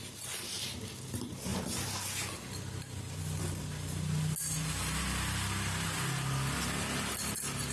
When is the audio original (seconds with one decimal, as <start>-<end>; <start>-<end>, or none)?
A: 0.0-7.7